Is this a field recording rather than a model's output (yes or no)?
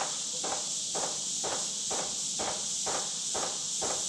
yes